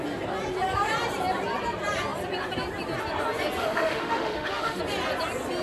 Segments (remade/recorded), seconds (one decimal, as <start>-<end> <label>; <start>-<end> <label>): 0.0-3.6 recorded; 3.6-4.8 remade; 4.8-5.6 recorded